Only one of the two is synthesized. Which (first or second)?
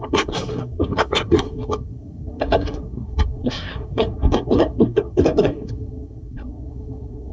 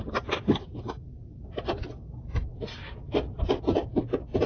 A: first